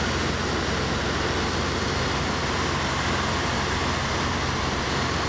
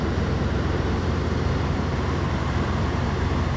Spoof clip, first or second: second